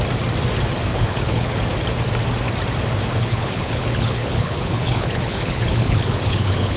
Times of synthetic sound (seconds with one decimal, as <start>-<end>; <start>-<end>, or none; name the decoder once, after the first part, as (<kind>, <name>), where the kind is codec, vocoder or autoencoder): 0.9-1.6 (codec, HILCodec); 3.2-6.8